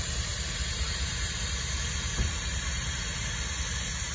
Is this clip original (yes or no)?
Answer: yes